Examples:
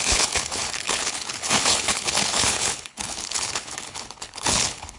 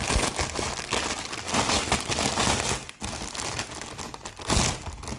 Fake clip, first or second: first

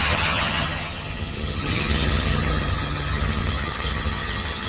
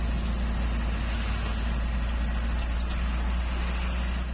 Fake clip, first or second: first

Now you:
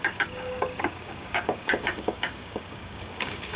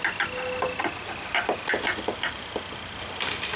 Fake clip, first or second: first